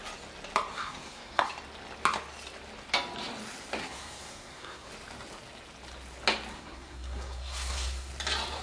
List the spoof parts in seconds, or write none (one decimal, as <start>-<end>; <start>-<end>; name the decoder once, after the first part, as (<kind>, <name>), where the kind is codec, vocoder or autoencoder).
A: 0.7-1.5 (codec, SNAC); 3.8-4.9; 6.5-8.1